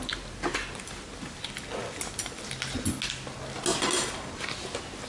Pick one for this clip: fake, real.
real